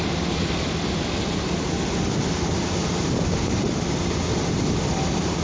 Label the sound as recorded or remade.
recorded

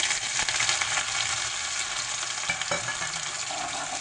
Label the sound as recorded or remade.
recorded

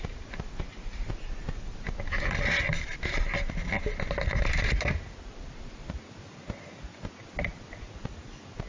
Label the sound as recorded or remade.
recorded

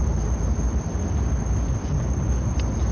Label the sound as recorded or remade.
recorded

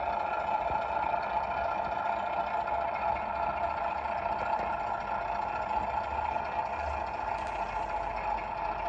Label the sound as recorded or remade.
recorded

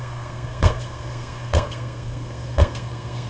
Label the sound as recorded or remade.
remade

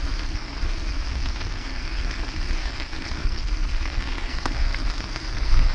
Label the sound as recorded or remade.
remade